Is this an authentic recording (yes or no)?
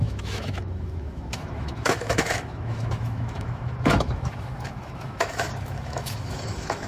no